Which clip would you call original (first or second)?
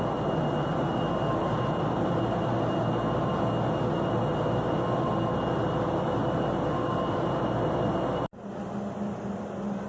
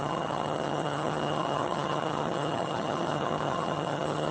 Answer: first